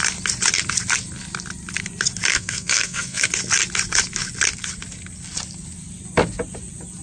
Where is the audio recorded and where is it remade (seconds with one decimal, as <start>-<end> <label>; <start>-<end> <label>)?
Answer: 0.0-2.3 recorded; 2.3-3.3 remade; 3.3-7.0 recorded